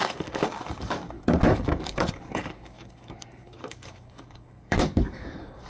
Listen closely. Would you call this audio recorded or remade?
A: remade